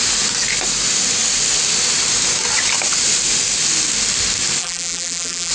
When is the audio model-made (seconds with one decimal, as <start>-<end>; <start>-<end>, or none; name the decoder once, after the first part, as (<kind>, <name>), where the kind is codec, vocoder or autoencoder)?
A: 4.6-5.5 (vocoder, BigVGAN v2)